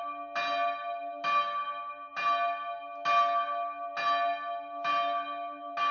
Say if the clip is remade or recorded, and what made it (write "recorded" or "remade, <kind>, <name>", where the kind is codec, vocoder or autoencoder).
recorded